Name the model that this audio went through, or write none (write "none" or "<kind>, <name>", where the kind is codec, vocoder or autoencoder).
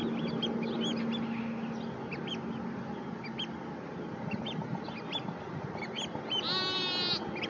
none